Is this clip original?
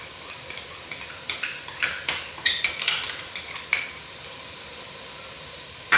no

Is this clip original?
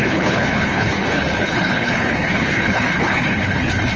no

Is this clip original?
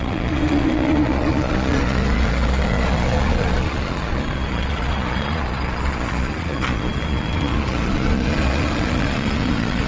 no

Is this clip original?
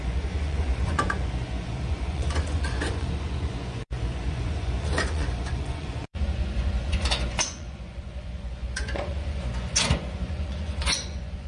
no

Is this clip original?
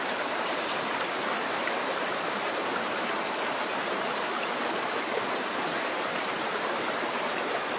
no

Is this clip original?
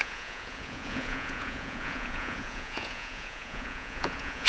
no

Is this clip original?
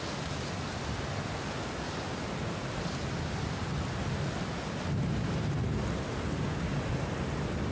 yes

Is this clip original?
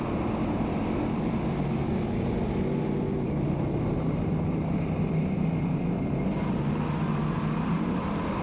yes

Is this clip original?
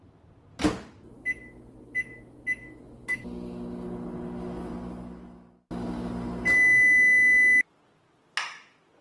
yes